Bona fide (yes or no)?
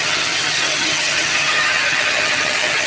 no